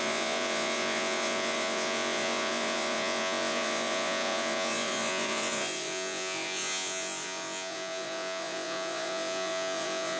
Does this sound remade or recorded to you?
remade